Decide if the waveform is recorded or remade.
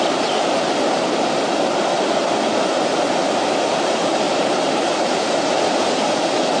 recorded